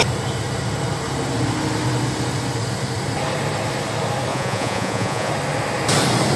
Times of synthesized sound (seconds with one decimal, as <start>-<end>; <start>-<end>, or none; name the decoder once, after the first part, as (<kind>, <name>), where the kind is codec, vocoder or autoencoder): 4.3-5.3 (vocoder, Vocos)